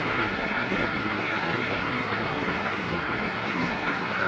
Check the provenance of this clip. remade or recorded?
remade